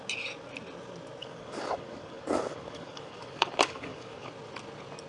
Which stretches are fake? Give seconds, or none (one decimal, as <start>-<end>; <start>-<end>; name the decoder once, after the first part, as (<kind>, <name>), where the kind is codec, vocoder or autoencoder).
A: 1.2-4.3 (codec, DAC)